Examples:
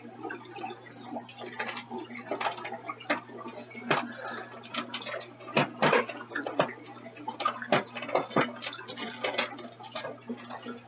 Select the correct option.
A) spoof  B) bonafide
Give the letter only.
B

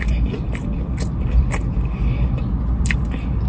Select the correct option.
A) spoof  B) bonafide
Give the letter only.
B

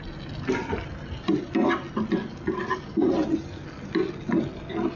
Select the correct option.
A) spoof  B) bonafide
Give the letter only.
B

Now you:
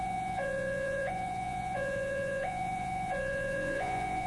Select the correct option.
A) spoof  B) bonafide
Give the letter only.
A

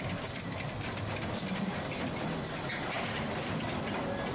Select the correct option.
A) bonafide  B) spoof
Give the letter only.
A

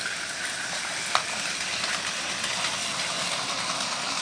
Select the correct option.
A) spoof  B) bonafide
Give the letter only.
B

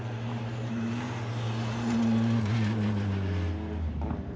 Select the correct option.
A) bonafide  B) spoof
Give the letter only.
A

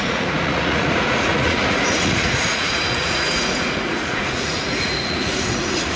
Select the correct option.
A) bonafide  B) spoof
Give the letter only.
B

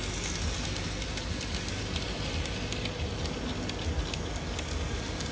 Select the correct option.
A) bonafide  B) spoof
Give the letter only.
A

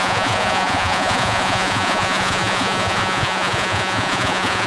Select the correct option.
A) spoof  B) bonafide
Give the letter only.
A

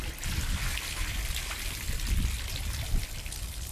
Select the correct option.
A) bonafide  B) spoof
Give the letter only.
A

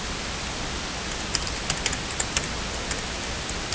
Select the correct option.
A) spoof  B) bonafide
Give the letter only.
B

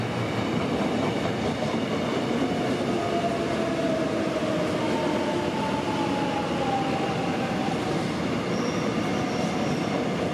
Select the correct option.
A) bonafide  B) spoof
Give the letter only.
A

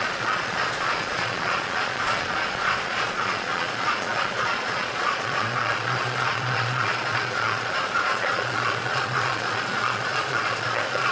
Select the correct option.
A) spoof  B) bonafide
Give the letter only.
A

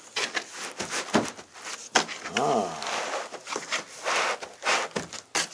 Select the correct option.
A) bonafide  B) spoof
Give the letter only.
A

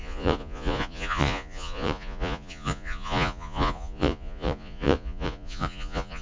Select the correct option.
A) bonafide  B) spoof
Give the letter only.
B